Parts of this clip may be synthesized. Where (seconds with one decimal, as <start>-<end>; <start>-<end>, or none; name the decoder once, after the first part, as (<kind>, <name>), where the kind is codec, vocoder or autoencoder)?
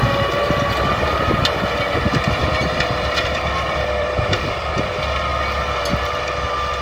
2.4-4.7 (vocoder, BigVGAN v2)